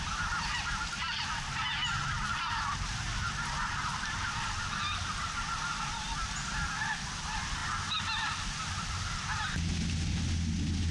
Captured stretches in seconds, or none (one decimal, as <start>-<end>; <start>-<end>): 0.0-10.9